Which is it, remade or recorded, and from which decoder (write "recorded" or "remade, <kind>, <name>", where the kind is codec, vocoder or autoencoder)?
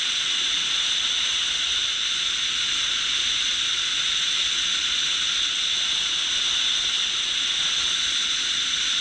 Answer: remade, vocoder, Vocos